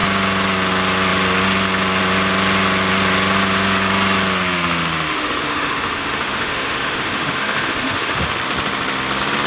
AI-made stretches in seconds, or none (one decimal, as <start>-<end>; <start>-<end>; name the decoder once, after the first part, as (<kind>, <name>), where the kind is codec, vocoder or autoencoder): 5.1-8.2 (autoencoder, DAC-VAE)